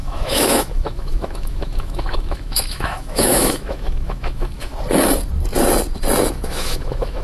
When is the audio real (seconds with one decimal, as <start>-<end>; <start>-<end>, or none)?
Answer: 4.7-6.3